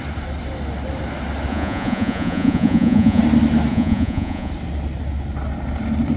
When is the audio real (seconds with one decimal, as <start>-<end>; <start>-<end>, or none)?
0.0-1.5; 3.2-3.7; 4.5-6.2